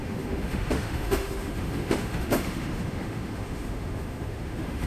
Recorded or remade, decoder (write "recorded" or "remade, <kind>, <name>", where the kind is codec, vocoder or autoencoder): remade, autoencoder, DAC-VAE